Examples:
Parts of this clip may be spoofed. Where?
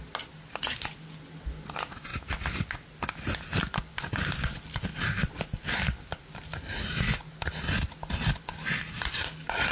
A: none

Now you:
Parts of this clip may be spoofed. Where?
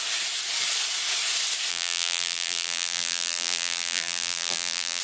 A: 1.7-5.0 (vocoder, BigVGAN v2)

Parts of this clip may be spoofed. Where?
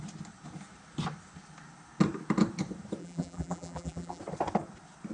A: 3.0-4.2 (vocoder, BigVGAN v2)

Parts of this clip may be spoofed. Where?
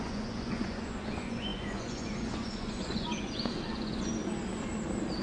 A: 0.0-4.1 (vocoder, Vocos)